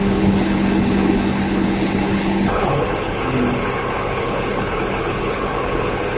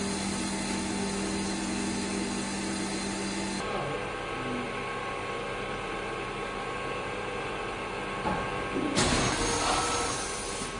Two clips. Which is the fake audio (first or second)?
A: first